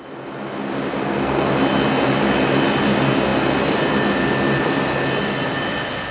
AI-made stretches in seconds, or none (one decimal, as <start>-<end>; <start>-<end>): 1.0-1.5